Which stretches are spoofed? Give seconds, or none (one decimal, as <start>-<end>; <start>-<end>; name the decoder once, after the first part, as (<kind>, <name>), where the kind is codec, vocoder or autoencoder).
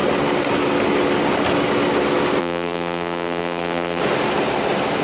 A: 2.4-4.0 (vocoder, BigVGAN v2)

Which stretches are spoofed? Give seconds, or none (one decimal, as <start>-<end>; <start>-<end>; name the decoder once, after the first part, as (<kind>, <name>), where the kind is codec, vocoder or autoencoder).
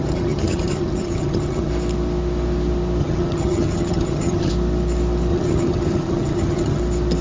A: 0.0-1.7 (vocoder, HiFi-GAN); 3.0-4.5; 5.3-6.8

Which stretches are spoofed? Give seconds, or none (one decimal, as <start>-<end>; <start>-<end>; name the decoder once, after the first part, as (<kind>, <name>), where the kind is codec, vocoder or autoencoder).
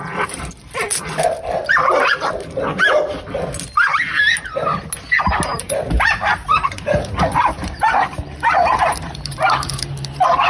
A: 1.0-1.6 (vocoder, BigVGAN v2); 5.5-10.1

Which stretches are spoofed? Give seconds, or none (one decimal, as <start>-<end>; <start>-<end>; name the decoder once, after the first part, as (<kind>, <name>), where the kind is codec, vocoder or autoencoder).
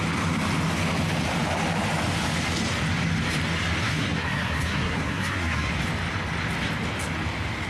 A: 3.8-5.7 (codec, SNAC)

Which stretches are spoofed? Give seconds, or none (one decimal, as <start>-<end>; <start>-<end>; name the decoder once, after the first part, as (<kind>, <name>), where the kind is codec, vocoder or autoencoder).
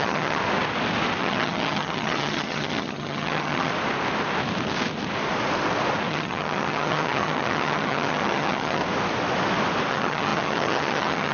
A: 0.0-0.4 (vocoder, HiFi-GAN); 1.2-3.7; 6.1-8.8; 9.9-11.3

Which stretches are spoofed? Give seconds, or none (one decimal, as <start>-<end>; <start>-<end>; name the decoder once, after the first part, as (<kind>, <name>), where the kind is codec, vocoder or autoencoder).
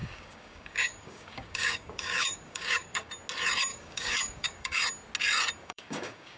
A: 0.0-3.1 (codec, DAC); 3.7-4.8; 5.6-6.4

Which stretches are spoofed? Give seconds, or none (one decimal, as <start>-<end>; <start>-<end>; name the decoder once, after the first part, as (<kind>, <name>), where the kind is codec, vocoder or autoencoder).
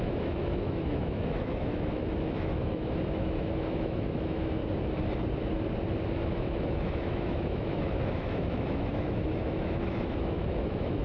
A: 0.0-4.6 (autoencoder, DAC-VAE); 6.1-11.0